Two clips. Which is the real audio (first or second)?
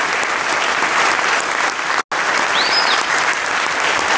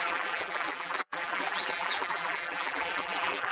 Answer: first